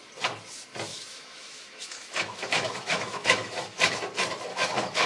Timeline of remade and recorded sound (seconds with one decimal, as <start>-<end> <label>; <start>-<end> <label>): 0.0-0.9 recorded; 0.9-4.0 remade; 4.0-4.5 recorded; 4.5-5.1 remade